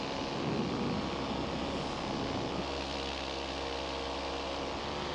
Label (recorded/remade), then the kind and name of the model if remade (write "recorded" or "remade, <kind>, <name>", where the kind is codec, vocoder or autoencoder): recorded